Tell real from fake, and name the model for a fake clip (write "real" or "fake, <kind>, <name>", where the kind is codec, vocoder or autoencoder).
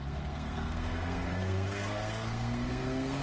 fake, codec, SNAC